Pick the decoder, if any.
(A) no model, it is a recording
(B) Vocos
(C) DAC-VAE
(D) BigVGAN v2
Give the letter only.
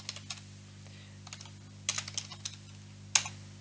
A